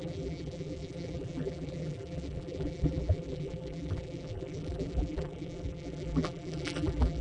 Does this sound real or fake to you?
fake